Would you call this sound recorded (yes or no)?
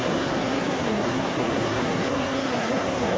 no